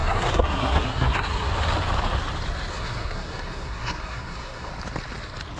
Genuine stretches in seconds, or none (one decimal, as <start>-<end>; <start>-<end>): 1.5-2.7; 4.7-5.6